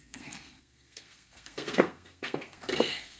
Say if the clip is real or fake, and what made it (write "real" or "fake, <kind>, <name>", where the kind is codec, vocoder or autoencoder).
fake, codec, SNAC